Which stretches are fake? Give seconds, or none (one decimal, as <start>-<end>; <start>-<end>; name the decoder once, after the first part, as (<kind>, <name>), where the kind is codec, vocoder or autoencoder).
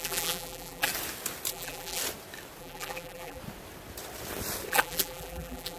0.0-0.9 (vocoder, BigVGAN v2); 1.5-2.0; 2.6-3.4; 4.7-5.8